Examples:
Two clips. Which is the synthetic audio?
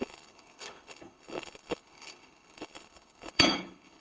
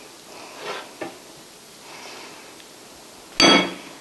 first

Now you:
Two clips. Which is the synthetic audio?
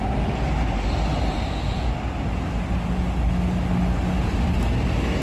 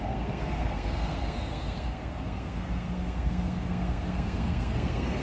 second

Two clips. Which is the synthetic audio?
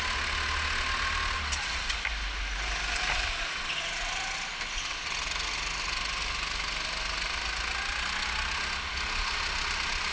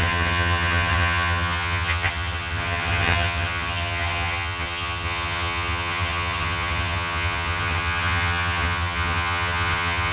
second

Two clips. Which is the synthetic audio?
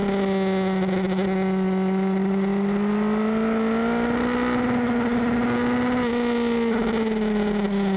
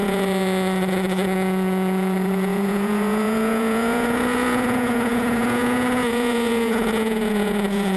second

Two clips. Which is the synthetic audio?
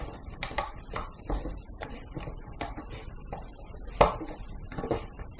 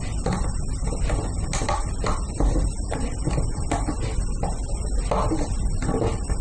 first